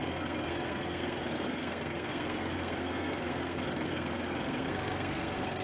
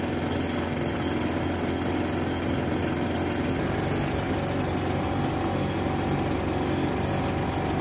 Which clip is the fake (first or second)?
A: first